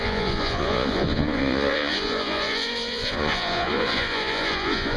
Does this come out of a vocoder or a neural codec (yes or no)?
yes